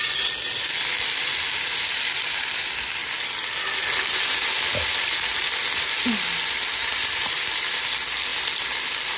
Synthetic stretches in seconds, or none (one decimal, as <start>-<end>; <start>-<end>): 3.0-3.8; 6.9-7.7; 8.3-9.2